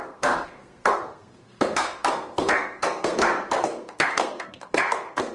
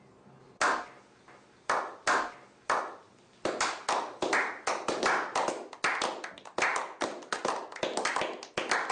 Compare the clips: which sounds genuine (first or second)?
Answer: second